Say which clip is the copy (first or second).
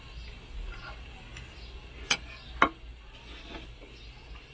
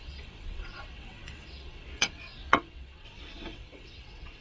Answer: second